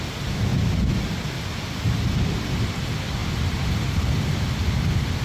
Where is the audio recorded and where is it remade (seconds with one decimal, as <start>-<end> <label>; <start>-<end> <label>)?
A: 0.0-5.2 recorded